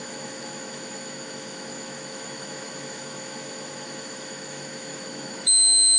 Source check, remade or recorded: remade